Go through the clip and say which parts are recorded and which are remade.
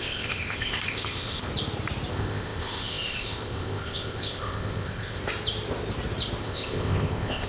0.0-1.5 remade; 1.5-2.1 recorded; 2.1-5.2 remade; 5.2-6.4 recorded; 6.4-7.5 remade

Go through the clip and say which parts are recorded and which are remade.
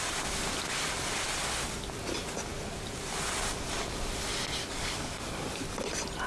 0.0-4.6 recorded; 4.6-5.4 remade; 5.4-6.3 recorded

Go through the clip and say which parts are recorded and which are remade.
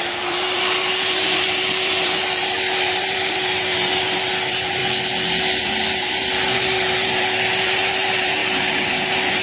0.0-4.8 remade; 4.8-5.6 recorded; 5.6-9.4 remade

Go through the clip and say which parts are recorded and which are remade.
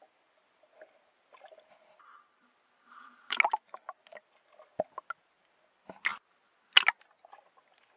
0.0-8.0 recorded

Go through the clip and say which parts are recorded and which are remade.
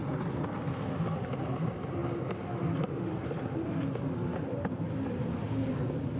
0.0-6.2 recorded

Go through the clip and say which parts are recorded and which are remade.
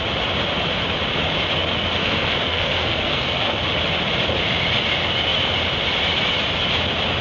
0.0-2.0 recorded; 2.0-3.6 remade; 3.6-7.2 recorded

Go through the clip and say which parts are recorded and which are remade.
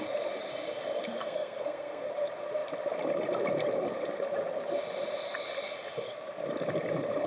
0.0-1.2 recorded; 1.2-2.1 remade; 2.1-7.3 recorded